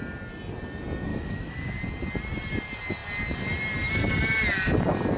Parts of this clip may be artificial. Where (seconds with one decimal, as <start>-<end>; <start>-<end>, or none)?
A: 1.1-1.8